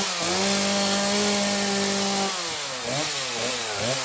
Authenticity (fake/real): real